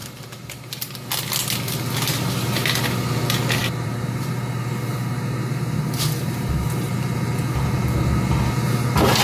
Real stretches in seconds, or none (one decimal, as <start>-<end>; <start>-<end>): 0.9-3.6; 6.9-9.2